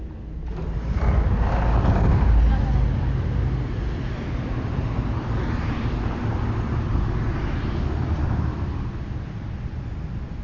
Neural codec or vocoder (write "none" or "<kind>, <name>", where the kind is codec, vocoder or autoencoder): none